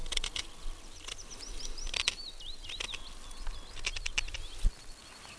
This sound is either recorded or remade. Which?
recorded